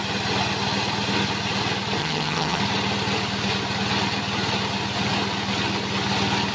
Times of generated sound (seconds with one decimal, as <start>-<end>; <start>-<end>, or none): 2.0-2.6